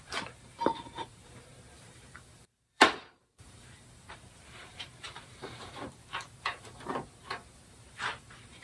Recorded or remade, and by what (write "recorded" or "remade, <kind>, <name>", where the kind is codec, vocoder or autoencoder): remade, vocoder, BigVGAN v2